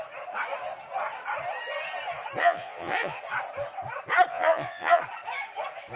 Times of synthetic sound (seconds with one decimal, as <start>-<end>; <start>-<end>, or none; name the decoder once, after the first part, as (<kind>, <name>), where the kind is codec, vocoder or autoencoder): 2.4-3.2 (vocoder, Vocos); 4.3-5.0